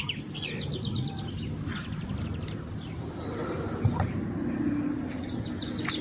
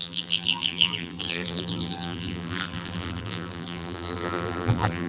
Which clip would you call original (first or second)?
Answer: first